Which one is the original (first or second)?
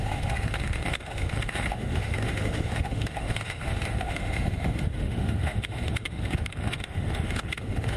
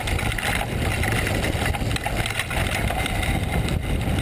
second